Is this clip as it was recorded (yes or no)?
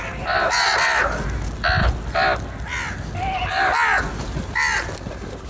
yes